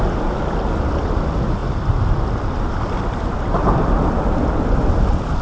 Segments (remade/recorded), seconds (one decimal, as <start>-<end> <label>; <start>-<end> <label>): 0.0-1.6 recorded; 1.6-4.8 remade; 4.8-5.4 recorded

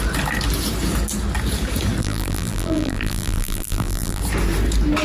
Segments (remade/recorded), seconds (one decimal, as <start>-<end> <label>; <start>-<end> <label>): 0.0-2.0 recorded; 2.0-4.2 remade; 4.2-5.0 recorded

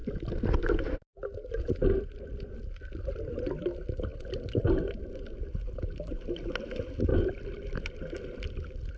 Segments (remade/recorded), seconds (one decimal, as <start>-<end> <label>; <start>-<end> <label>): 0.0-0.6 remade; 0.6-1.8 recorded; 1.8-3.4 remade; 3.4-7.1 recorded; 7.1-7.9 remade; 7.9-9.0 recorded

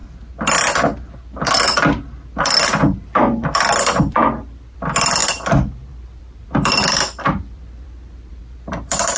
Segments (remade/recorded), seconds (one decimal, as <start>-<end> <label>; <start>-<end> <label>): 0.0-2.4 recorded; 2.4-9.2 remade

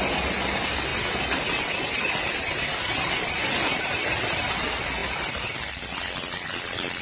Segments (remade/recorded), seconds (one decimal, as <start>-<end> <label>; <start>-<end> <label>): 0.0-5.0 recorded; 5.0-5.7 remade; 5.7-7.0 recorded

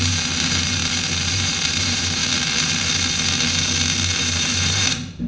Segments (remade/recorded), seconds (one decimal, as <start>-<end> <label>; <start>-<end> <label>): 0.0-0.8 remade; 0.8-1.3 recorded; 1.3-2.2 remade; 2.2-4.2 recorded; 4.2-5.3 remade

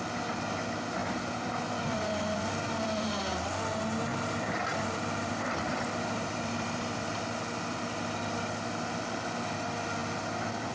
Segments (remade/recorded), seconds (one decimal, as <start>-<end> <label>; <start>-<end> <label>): 0.0-1.0 recorded; 1.0-3.1 remade; 3.1-4.1 recorded; 4.1-7.1 remade; 7.1-10.7 recorded